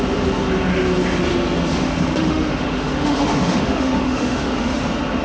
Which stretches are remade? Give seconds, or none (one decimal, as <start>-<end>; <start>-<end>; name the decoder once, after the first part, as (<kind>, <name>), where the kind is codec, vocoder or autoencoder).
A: 1.7-4.8 (autoencoder, DAC-VAE)